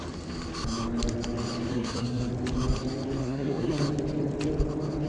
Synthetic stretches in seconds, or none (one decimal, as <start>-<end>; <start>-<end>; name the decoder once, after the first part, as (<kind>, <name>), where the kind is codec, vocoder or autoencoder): 1.7-2.3 (codec, SNAC); 3.2-3.8